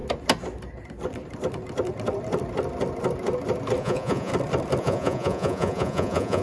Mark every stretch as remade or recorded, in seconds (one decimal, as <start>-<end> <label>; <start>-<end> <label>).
0.0-3.8 recorded; 3.8-4.3 remade; 4.3-4.8 recorded; 4.8-6.4 remade